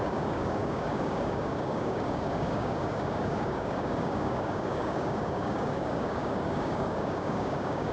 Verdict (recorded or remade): remade